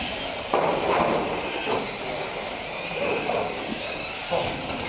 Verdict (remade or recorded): recorded